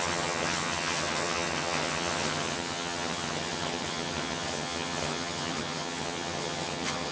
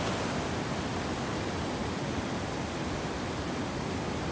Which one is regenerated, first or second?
first